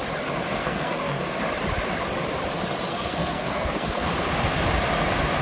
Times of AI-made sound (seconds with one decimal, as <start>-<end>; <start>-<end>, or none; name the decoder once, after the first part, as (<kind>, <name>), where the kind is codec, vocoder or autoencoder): 0.6-1.4 (codec, SNAC); 2.9-4.1

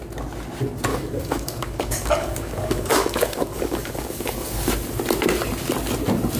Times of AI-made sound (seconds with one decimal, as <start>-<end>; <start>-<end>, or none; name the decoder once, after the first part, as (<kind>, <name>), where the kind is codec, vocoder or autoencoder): 0.9-4.7 (codec, DAC)